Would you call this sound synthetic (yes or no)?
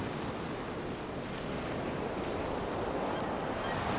no